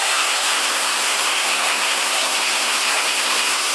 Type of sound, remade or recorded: remade